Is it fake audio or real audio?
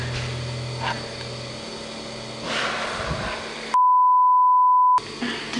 real